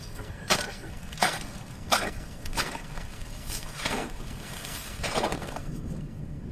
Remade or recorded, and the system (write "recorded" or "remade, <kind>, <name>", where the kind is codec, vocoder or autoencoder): remade, codec, SNAC